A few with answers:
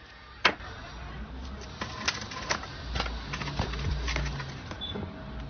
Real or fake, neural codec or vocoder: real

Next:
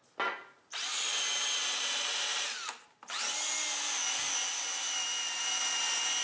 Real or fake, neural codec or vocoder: real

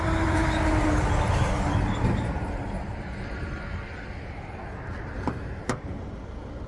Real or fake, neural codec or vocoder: real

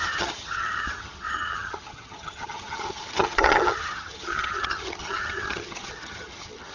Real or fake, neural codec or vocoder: fake, vocoder, HiFi-GAN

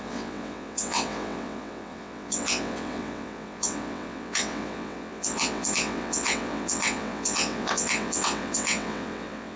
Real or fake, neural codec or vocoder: fake, vocoder, WaveNeXt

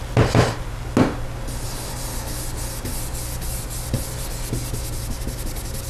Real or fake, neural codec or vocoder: real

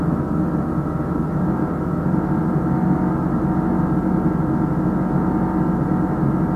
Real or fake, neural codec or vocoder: real